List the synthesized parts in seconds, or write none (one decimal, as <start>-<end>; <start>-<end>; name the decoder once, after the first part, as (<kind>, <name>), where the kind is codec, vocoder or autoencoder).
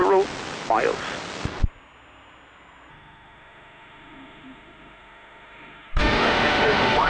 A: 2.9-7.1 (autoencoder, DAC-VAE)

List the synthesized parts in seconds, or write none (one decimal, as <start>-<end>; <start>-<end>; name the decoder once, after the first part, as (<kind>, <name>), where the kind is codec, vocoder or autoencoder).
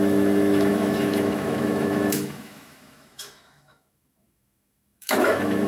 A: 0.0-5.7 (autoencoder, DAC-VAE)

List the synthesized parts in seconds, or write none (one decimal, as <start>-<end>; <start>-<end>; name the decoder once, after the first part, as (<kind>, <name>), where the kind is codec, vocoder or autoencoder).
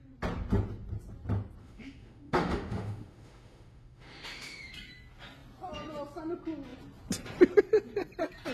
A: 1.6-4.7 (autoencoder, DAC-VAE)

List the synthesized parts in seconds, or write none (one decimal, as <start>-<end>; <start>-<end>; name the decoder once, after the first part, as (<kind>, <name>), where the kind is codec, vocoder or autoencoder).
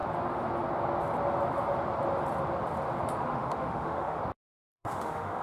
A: 3.2-4.2 (autoencoder, DAC-VAE); 4.7-5.4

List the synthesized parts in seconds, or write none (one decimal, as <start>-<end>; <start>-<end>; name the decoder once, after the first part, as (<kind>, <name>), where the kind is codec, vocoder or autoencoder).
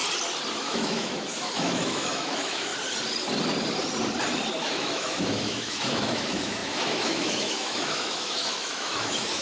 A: 0.5-2.7 (autoencoder, DAC-VAE); 4.6-9.4